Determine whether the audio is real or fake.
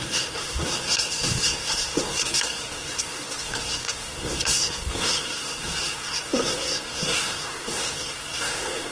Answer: fake